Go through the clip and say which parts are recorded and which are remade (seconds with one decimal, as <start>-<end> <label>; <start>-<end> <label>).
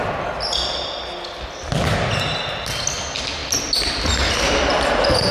0.0-3.4 recorded; 3.4-3.9 remade; 3.9-5.3 recorded